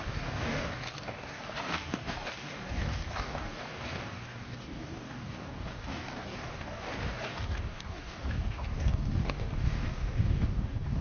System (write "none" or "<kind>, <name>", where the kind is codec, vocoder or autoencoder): codec, DAC